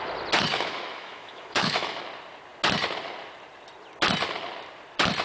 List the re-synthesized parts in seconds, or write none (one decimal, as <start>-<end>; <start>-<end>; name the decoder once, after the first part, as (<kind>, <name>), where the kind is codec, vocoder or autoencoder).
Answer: 0.5-2.0 (autoencoder, DAC-VAE)